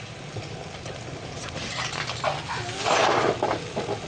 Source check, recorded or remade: recorded